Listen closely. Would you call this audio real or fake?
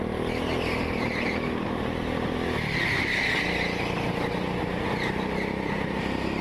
real